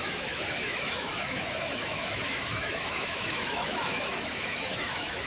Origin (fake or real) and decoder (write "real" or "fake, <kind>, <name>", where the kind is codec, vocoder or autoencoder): fake, autoencoder, DAC-VAE